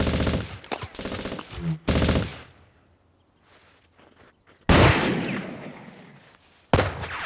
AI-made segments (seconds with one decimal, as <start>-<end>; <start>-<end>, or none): none